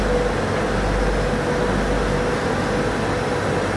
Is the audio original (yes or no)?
yes